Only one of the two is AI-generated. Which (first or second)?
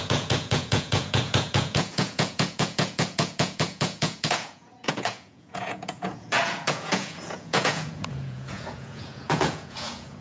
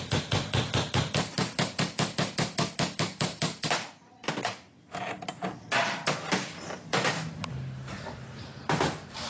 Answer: first